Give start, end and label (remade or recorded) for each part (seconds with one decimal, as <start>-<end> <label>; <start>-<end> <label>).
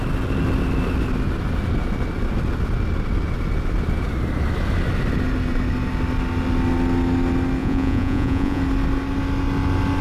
0.0-7.6 recorded; 7.6-8.6 remade; 8.6-10.0 recorded